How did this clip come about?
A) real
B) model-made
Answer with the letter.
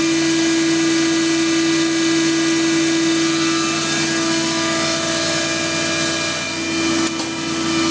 A